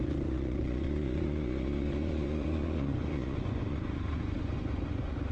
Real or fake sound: fake